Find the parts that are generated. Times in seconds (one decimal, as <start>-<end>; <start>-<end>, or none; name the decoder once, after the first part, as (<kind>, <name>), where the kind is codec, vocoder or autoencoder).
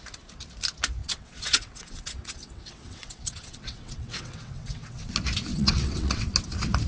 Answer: 1.0-5.1 (vocoder, WaveNeXt); 5.5-6.2